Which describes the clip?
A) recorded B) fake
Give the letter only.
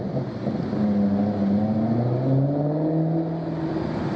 A